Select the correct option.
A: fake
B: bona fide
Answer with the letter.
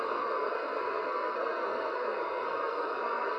A